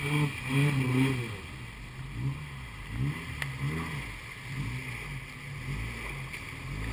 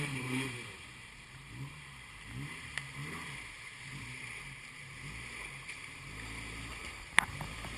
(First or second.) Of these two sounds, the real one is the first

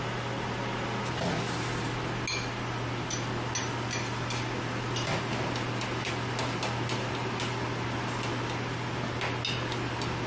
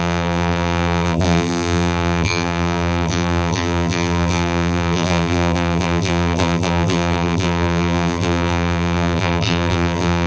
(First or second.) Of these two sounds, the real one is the first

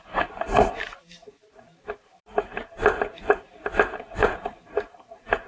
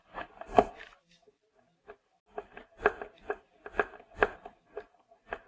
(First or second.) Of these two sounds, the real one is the second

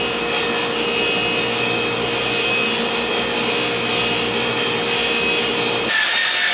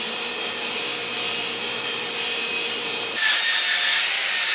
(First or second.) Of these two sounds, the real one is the first